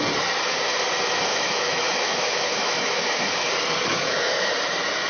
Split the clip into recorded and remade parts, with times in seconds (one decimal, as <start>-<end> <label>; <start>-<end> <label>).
0.0-1.3 recorded; 1.3-3.5 remade; 3.5-3.9 recorded; 3.9-4.5 remade; 4.5-5.1 recorded